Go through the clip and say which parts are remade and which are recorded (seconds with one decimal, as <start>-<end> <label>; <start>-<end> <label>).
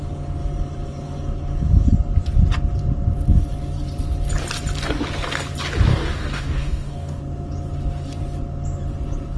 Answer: 0.0-5.9 recorded; 5.9-7.2 remade; 7.2-9.4 recorded